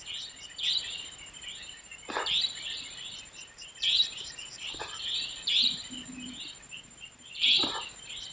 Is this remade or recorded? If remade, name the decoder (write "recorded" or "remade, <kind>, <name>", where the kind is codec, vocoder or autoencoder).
remade, vocoder, BigVGAN v2